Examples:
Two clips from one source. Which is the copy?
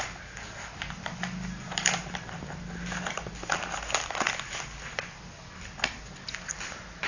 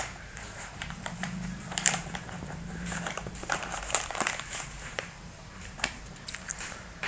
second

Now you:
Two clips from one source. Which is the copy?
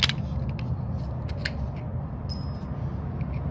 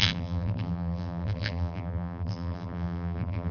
second